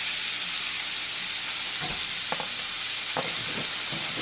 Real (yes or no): yes